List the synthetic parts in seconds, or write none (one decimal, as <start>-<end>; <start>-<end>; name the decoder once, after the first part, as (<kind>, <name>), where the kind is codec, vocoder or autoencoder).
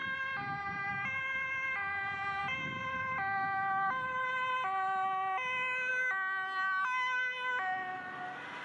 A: none